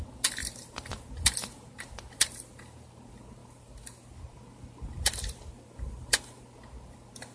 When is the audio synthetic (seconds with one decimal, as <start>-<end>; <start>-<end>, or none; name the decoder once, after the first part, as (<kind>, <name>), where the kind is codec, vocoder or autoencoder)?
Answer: 0.4-1.0 (vocoder, BigVGAN v2); 3.4-6.4